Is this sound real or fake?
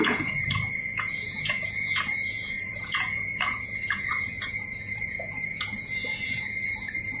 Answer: fake